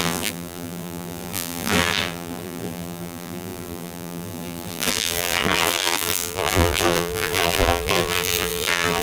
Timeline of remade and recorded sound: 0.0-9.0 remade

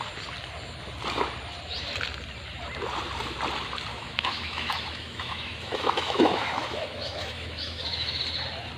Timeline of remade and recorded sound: 0.0-3.9 recorded; 3.9-8.2 remade; 8.2-8.8 recorded

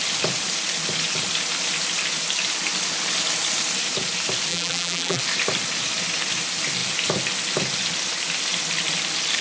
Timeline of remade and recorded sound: 0.0-4.5 recorded; 4.5-5.2 remade; 5.2-9.4 recorded

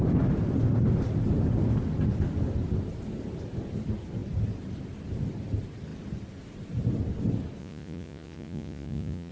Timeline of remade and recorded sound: 0.0-7.6 recorded; 7.6-9.3 remade

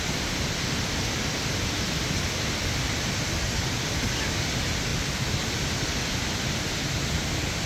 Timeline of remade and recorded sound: 0.0-7.7 recorded

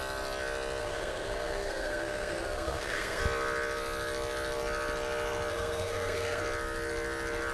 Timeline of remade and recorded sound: 0.0-0.8 recorded; 0.8-3.2 remade; 3.2-5.5 recorded; 5.5-6.4 remade; 6.4-7.5 recorded

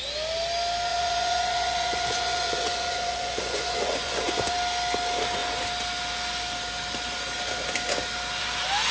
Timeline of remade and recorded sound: 0.0-0.9 recorded; 0.9-4.5 remade; 4.5-8.9 recorded